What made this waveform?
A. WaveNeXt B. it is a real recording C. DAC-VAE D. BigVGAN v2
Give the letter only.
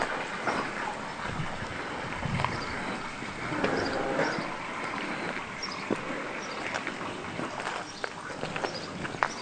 B